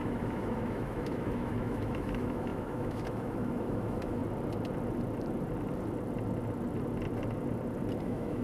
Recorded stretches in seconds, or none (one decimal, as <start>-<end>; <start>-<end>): 4.2-8.0